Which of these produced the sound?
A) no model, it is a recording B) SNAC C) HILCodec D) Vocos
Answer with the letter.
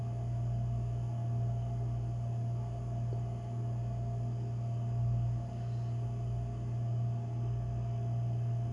A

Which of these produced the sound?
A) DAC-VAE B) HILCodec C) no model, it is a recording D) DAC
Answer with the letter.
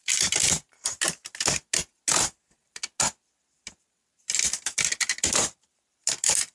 C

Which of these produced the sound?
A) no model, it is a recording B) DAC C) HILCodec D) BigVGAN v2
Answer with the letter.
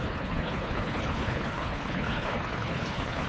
C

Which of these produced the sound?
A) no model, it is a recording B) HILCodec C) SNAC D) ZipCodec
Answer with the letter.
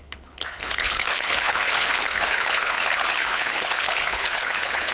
B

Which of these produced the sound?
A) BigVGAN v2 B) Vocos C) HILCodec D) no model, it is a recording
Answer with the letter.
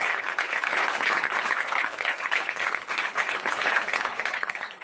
C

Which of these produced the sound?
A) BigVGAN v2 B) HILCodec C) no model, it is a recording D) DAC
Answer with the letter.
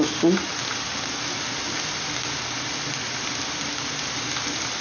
C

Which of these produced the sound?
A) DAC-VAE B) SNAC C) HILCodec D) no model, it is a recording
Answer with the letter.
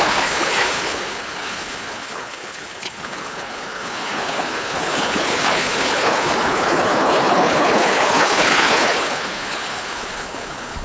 C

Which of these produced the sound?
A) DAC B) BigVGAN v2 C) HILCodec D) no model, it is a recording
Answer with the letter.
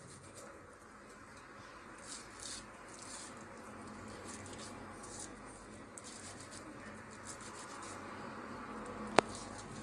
D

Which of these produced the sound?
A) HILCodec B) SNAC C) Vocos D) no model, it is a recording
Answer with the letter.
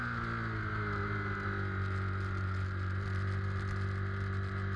D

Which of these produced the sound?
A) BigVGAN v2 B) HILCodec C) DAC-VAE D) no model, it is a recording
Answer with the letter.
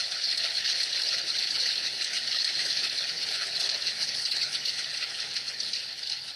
B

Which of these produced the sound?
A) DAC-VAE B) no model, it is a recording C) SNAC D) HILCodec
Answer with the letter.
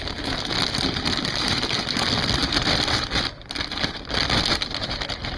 B